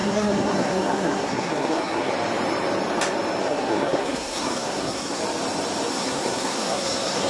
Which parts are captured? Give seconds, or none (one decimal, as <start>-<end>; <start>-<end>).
2.1-3.4; 5.2-5.9